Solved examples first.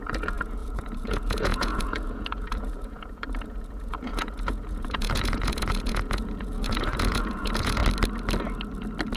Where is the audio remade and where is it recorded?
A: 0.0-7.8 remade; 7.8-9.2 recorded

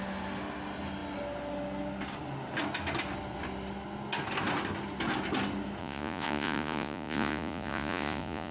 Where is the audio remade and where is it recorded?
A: 0.0-5.8 recorded; 5.8-8.5 remade